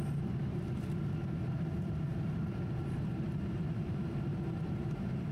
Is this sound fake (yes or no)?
yes